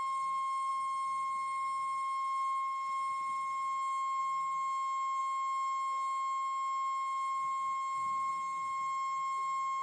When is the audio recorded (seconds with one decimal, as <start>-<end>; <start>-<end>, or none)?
none